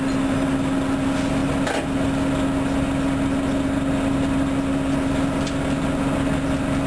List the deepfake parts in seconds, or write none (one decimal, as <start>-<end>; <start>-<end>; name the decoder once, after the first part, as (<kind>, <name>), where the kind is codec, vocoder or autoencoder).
none